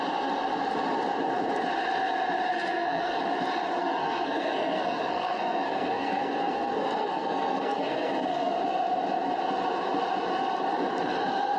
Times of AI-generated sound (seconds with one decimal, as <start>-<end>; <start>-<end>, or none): 2.5-3.2; 3.8-8.5